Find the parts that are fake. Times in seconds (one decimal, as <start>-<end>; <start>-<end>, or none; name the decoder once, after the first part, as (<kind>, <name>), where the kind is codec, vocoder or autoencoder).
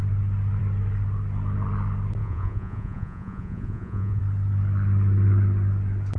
2.2-4.2 (vocoder, Vocos)